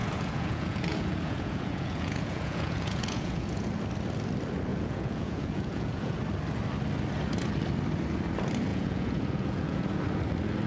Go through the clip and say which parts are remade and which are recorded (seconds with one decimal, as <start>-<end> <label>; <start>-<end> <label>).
0.0-3.7 remade; 3.7-4.7 recorded; 4.7-6.2 remade; 6.2-8.7 recorded; 8.7-10.0 remade; 10.0-10.7 recorded